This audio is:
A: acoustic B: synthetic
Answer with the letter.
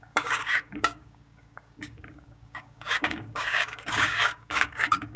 B